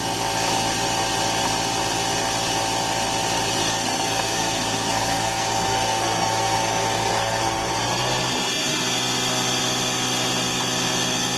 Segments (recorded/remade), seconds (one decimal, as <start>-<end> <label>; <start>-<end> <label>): 0.0-3.6 recorded; 3.6-7.7 remade; 7.7-11.4 recorded